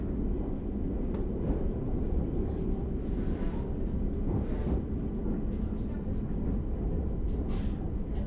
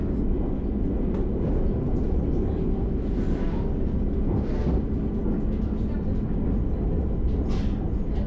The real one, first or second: second